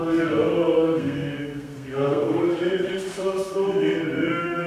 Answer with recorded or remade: remade